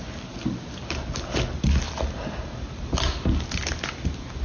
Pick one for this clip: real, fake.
real